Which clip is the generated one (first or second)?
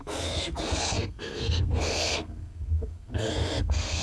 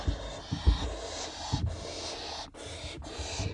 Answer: first